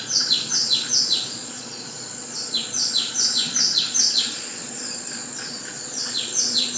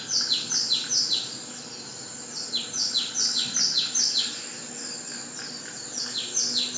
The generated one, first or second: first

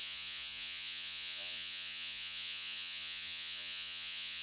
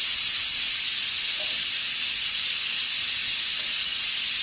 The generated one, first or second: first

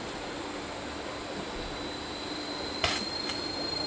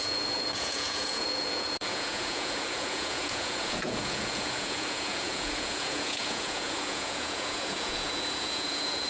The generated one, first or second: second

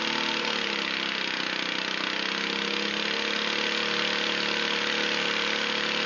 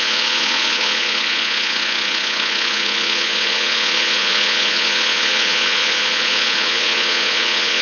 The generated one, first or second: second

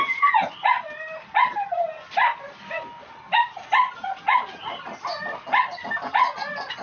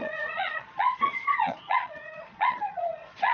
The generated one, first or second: second